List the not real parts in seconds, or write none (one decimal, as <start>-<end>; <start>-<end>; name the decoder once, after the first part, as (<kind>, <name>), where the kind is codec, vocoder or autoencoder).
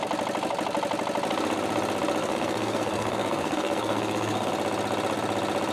2.2-4.5 (codec, SNAC)